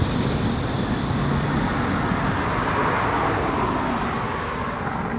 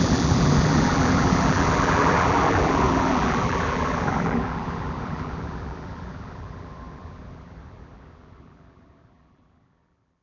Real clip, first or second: first